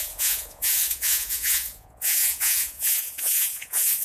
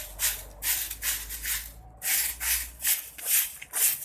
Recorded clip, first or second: second